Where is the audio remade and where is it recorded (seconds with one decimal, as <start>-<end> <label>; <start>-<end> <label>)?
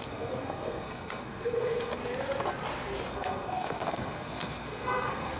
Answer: 0.0-2.0 remade; 2.0-3.1 recorded; 3.1-5.4 remade